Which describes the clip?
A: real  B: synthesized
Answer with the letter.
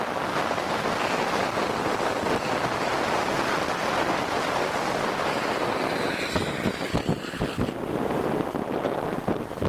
A